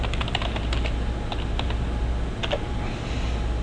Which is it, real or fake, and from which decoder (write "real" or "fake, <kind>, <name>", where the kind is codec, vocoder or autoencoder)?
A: real